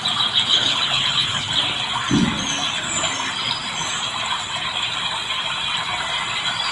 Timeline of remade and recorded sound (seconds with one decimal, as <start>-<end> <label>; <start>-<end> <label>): 0.0-0.5 recorded; 0.5-1.5 remade; 1.5-6.7 recorded